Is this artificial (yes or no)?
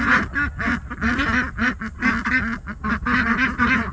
no